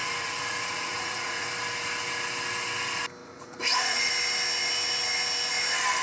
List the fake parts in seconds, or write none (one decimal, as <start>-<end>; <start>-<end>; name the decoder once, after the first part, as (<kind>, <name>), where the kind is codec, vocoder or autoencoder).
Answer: 0.0-1.5 (vocoder, Vocos); 3.2-4.1